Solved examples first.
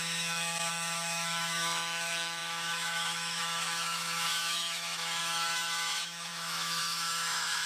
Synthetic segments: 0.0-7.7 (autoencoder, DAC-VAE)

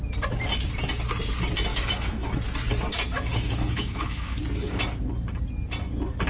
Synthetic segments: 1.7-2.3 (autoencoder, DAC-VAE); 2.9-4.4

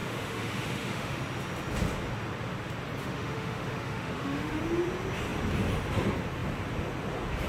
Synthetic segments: 0.0-1.2 (autoencoder, DAC-VAE); 3.0-4.6

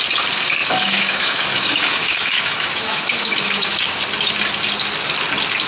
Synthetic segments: 0.6-4.0 (autoencoder, DAC-VAE)

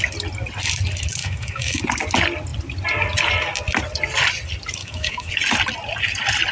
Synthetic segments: 1.2-1.8 (autoencoder, DAC-VAE); 4.8-5.3

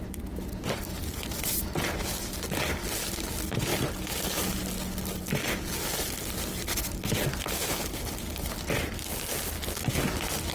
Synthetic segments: none

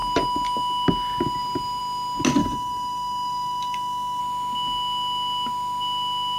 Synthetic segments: 2.4-4.2 (autoencoder, DAC-VAE)

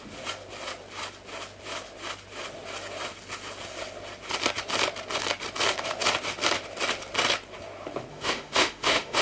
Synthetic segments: 8.1-9.2 (autoencoder, DAC-VAE)